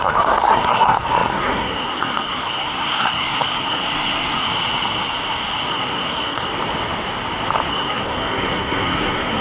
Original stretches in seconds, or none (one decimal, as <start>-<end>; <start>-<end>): 4.5-5.7; 6.5-7.7